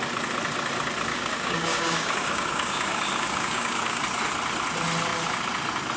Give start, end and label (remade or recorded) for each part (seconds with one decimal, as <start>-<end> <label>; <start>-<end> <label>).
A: 0.0-1.1 recorded; 1.1-4.0 remade; 4.0-6.0 recorded